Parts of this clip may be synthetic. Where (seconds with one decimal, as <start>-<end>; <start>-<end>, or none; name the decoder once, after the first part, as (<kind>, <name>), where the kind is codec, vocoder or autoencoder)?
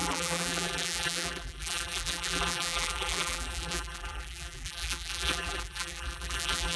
0.0-6.8 (vocoder, BigVGAN v2)